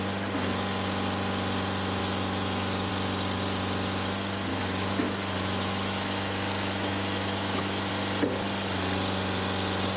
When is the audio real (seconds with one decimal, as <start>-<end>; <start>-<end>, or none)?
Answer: 0.0-2.0; 2.9-4.5; 7.9-10.0